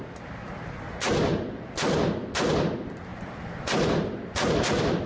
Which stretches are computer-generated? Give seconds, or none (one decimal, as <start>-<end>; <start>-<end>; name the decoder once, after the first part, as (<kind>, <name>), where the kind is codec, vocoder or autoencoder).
3.1-4.5 (vocoder, BigVGAN v2)